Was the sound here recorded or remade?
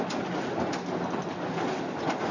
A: recorded